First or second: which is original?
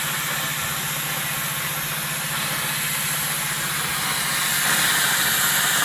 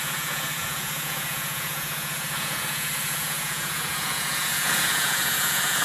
first